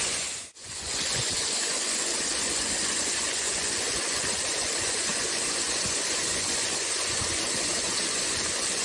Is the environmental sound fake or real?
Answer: fake